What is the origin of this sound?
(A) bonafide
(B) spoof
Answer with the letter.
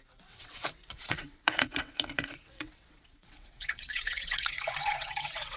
B